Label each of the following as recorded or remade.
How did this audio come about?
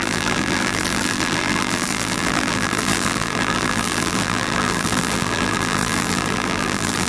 remade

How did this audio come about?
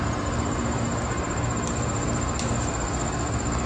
recorded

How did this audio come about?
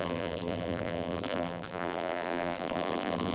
remade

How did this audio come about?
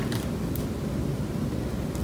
recorded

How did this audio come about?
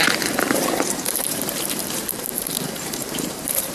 remade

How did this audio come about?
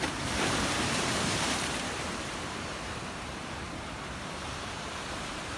remade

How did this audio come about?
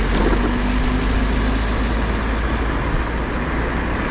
recorded